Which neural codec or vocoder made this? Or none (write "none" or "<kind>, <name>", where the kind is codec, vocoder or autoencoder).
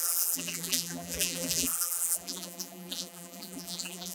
vocoder, BigVGAN v2